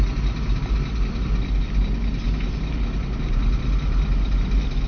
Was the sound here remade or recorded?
recorded